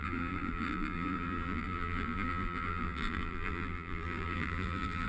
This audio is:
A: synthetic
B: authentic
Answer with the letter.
A